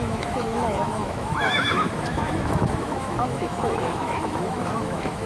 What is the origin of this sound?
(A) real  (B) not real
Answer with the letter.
B